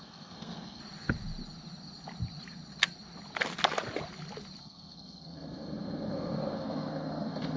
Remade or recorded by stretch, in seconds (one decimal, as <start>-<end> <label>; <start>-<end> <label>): 0.0-0.8 remade; 0.8-4.6 recorded; 4.6-7.6 remade